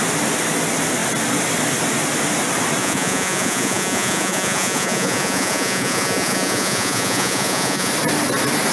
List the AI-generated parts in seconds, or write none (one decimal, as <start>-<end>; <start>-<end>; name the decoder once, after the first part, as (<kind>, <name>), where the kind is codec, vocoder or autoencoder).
2.8-7.9 (vocoder, Vocos)

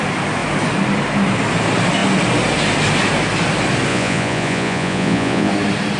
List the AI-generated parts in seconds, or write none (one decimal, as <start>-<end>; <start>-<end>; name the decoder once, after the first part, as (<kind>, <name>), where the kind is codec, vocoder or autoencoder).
3.9-5.5 (vocoder, Vocos)

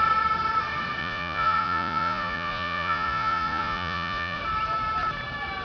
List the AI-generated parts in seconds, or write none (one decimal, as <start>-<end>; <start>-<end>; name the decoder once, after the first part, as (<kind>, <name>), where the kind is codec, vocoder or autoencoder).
1.0-4.4 (vocoder, Vocos)

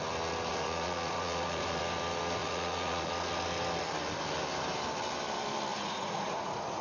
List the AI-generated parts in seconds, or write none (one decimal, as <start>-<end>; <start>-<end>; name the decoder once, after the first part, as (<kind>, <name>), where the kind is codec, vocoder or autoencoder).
0.5-1.8 (vocoder, Vocos); 2.4-3.1; 5.7-6.8

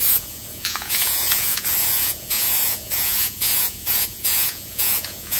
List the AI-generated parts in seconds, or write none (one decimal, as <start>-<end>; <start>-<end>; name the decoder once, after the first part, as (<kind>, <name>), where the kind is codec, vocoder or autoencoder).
0.0-5.4 (vocoder, Vocos)

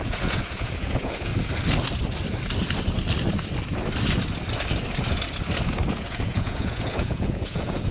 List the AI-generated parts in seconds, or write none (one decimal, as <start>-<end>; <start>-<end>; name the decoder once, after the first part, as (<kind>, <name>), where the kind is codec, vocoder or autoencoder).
0.0-1.3 (vocoder, Vocos); 5.9-7.9

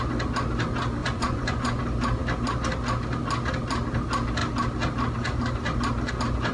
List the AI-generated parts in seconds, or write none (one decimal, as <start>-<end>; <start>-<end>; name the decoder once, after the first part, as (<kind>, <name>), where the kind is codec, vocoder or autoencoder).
1.0-1.8 (vocoder, Vocos)